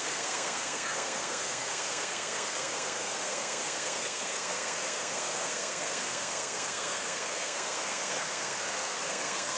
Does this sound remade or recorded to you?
remade